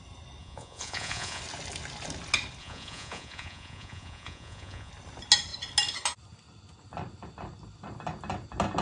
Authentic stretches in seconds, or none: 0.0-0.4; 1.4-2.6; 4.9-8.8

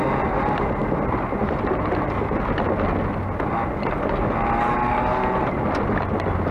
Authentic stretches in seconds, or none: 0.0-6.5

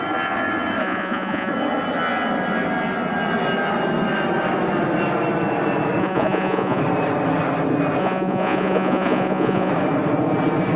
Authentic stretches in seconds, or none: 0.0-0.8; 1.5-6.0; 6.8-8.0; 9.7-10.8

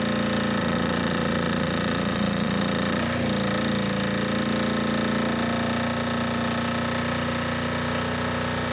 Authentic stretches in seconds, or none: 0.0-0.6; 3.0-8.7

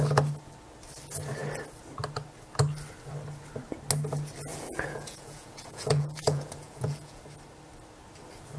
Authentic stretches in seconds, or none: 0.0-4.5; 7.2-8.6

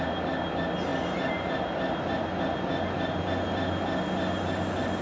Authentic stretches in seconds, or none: 0.0-5.0